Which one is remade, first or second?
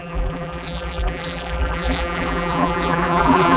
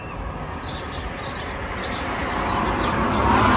first